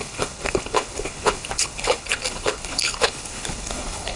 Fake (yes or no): yes